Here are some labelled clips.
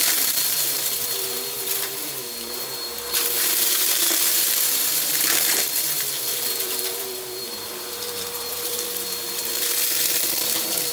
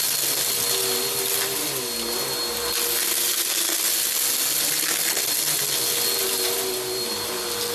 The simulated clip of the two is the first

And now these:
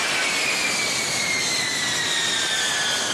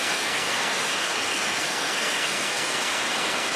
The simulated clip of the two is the second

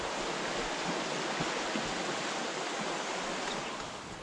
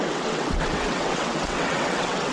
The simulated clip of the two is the second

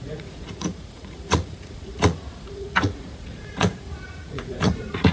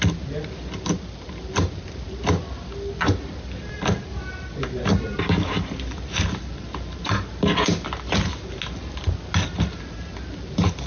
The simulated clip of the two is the first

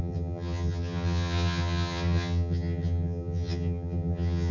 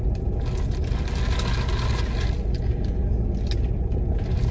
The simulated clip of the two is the first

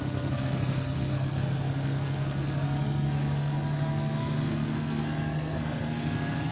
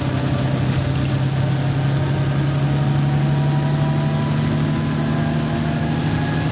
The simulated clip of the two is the first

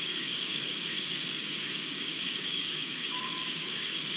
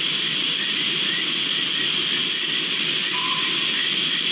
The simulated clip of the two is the first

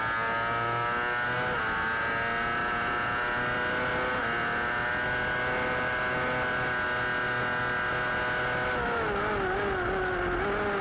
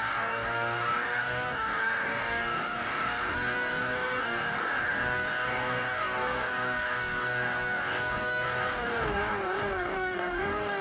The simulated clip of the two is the second